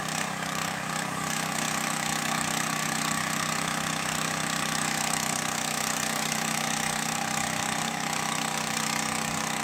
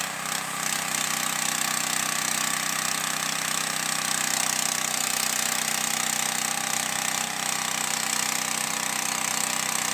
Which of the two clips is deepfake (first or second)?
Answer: first